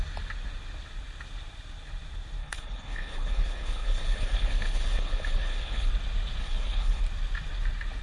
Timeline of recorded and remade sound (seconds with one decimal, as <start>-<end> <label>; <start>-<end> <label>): 0.0-2.4 recorded; 2.4-5.9 remade; 5.9-6.4 recorded; 6.4-7.0 remade; 7.0-8.0 recorded